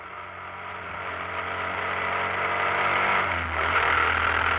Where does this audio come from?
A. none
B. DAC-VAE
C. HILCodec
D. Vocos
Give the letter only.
A